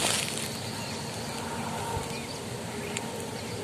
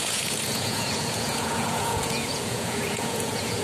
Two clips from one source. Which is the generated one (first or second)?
second